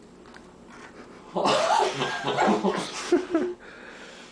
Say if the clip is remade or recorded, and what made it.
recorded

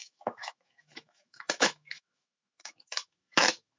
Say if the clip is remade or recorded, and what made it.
remade, autoencoder, DAC-VAE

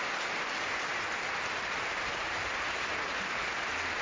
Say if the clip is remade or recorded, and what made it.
recorded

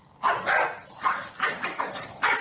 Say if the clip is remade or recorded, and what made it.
recorded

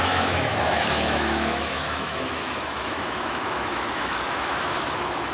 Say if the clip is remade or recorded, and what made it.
remade, autoencoder, DAC-VAE